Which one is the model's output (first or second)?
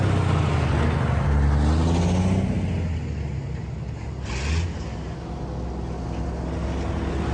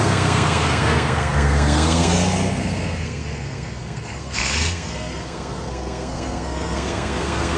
second